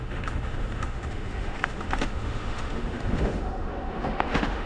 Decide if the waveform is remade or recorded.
remade